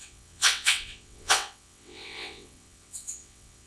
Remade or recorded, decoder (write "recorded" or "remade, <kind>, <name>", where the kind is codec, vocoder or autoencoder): remade, vocoder, WaveNeXt